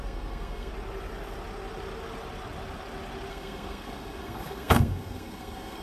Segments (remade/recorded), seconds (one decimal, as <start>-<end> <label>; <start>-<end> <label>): 0.0-0.7 remade; 0.7-3.3 recorded; 3.3-5.8 remade